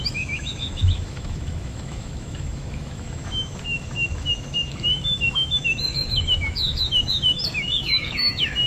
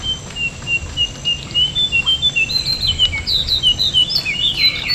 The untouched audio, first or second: second